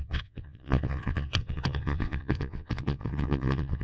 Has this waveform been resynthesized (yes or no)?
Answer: yes